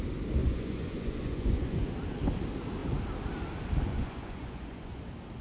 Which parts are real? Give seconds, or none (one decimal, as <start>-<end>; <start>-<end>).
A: 0.0-0.4; 1.9-3.9; 5.0-5.4